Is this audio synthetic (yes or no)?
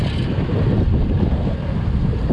no